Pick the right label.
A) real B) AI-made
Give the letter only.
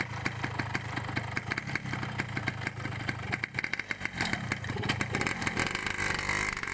A